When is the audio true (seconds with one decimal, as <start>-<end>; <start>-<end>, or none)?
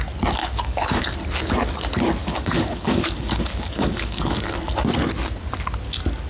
0.0-0.4; 1.0-2.2; 4.6-6.3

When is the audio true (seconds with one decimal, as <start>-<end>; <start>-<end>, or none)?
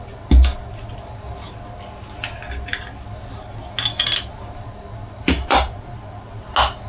0.0-5.2; 6.4-6.9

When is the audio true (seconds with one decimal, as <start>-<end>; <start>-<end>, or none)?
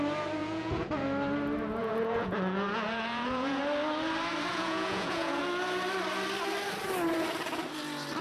0.0-0.4; 0.9-1.8; 3.6-4.5; 5.4-8.2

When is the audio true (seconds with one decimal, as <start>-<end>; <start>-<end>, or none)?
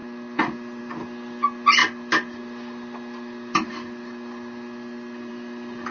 0.0-5.9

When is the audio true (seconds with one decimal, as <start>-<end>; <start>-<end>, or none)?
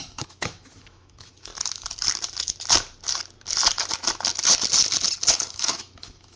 1.5-5.3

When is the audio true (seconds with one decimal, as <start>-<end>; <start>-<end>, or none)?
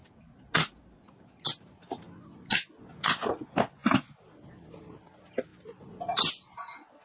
0.0-3.8; 4.8-5.5; 6.3-7.0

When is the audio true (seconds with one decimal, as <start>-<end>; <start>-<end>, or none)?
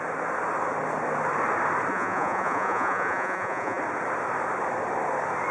0.0-1.9; 3.8-5.5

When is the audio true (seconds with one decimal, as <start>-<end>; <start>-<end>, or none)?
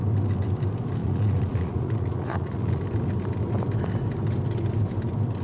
0.0-1.0; 2.8-5.4